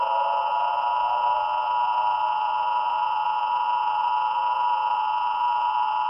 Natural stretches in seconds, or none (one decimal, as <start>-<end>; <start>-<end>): none